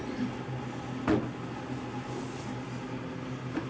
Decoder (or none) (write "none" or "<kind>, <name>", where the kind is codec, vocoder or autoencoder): none